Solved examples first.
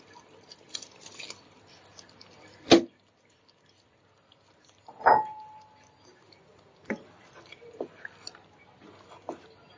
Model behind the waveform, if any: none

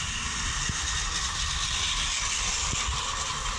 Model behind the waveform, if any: none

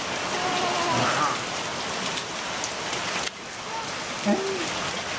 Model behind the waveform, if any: none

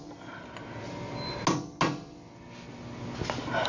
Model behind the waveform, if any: none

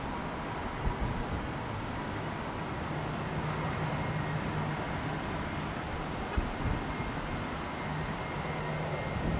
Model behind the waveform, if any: none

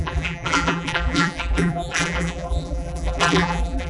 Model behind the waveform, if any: vocoder, BigVGAN v2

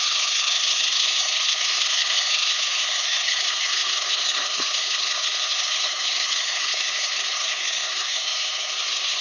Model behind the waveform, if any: codec, SNAC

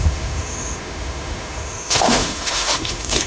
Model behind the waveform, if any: autoencoder, DAC-VAE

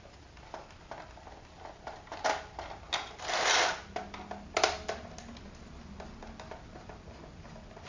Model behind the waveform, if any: none